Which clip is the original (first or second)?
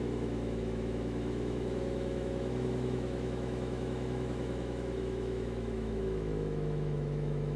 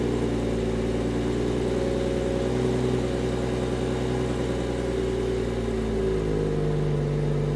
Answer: second